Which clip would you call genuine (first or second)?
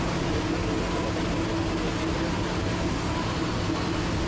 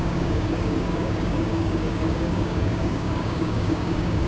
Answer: first